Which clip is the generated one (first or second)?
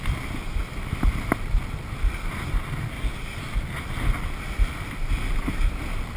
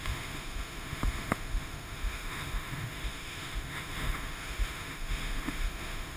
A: second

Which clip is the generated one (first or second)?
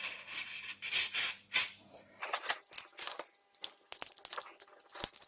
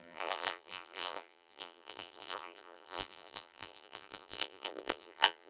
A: second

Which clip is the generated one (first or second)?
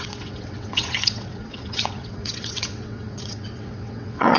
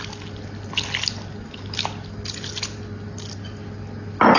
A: first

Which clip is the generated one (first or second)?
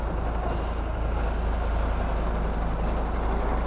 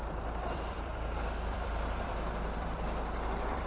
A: second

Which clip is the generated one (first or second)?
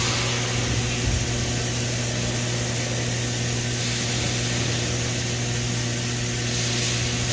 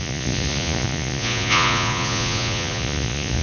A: second